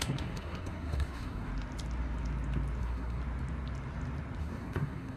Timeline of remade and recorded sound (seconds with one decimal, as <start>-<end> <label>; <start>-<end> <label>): 0.0-1.5 remade; 1.5-2.8 recorded; 2.8-3.2 remade; 3.2-4.4 recorded; 4.4-5.2 remade